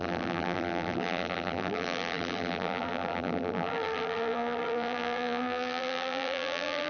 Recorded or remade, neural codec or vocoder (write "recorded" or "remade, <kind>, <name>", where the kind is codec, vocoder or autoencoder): remade, vocoder, BigVGAN v2